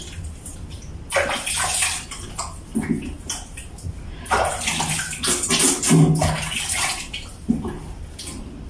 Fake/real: real